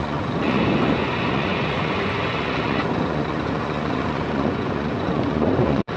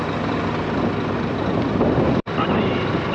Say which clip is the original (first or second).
second